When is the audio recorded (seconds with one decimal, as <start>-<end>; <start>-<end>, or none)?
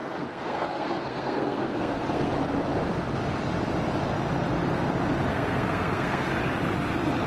2.3-5.3; 6.3-7.3